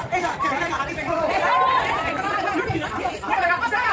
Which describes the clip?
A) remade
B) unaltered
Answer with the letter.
B